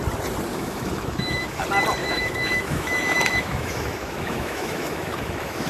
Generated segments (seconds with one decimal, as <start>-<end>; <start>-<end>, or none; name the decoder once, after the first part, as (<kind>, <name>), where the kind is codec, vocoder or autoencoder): 0.5-1.6 (autoencoder, DAC-VAE); 2.0-5.7